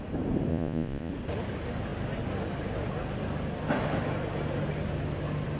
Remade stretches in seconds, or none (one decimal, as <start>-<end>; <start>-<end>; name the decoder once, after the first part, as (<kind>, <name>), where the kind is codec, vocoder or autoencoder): 0.5-1.1 (vocoder, Vocos)